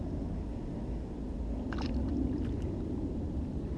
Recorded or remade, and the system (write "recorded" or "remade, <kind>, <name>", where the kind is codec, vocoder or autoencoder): recorded